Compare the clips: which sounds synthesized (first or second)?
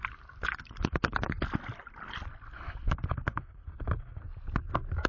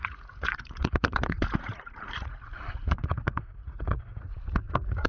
second